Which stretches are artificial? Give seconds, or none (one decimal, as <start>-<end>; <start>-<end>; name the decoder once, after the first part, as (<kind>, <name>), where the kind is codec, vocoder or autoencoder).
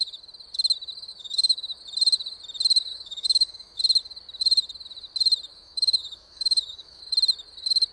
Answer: 1.1-1.8 (autoencoder, DAC-VAE); 2.9-3.8; 5.5-7.0